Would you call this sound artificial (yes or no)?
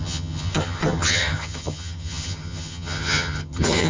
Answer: yes